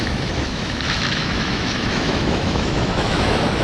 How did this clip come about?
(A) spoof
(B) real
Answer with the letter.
A